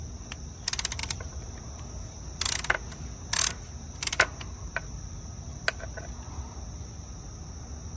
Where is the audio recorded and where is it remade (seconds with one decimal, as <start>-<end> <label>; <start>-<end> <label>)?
0.0-8.0 recorded